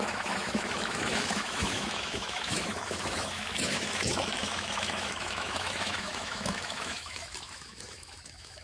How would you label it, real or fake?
fake